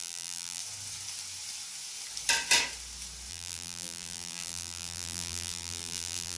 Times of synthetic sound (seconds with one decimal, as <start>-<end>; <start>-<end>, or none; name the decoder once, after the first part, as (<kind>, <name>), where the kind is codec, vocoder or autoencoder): 0.0-0.6 (vocoder, BigVGAN v2); 3.3-6.4